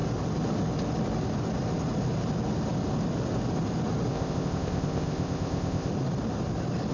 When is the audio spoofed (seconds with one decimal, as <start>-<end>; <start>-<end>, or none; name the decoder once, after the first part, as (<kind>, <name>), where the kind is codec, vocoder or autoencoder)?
4.1-5.9 (codec, ZipCodec)